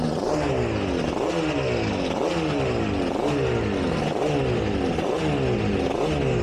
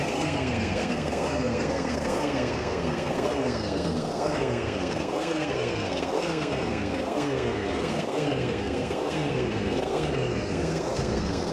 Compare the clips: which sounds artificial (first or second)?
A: second